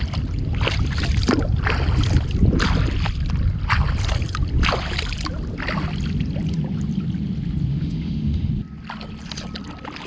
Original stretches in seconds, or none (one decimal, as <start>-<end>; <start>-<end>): 0.0-7.7; 8.5-10.1